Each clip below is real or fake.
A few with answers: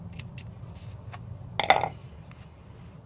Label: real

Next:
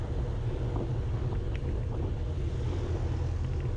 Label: real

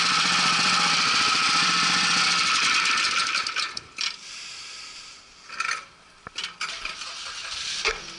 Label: fake